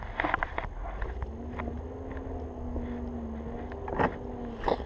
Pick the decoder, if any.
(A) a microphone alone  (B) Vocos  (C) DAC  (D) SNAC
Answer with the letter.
A